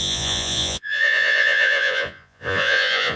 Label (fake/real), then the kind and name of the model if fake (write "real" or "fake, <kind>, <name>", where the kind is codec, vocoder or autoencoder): fake, vocoder, Vocos